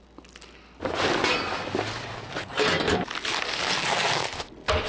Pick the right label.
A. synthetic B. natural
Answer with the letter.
B